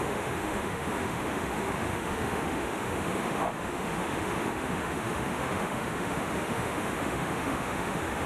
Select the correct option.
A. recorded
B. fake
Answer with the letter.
B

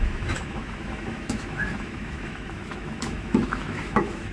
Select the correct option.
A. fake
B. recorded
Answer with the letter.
A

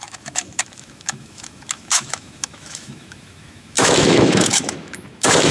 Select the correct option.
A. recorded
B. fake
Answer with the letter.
B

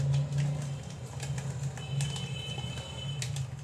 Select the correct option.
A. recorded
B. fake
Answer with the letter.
A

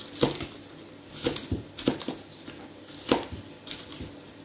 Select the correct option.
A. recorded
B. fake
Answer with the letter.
A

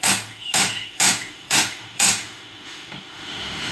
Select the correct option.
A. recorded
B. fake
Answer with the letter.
B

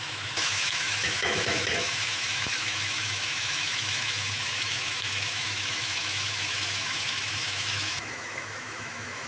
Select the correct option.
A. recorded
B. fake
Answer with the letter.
B